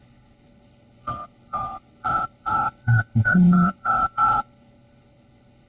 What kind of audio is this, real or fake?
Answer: fake